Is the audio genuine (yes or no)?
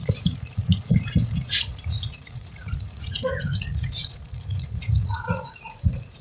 no